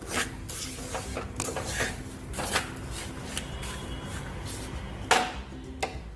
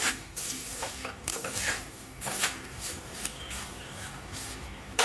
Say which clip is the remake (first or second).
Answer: second